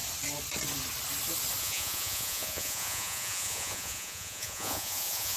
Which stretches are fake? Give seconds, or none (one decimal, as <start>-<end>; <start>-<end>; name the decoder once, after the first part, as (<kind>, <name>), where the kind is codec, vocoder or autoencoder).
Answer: 1.6-5.4 (vocoder, Vocos)